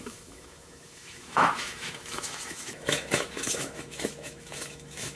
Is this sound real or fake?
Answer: fake